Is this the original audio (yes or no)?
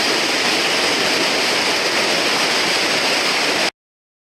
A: yes